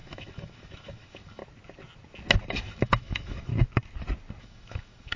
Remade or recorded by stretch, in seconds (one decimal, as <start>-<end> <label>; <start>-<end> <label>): 0.0-1.4 remade; 1.4-2.5 recorded; 2.5-3.5 remade; 3.5-4.4 recorded; 4.4-5.2 remade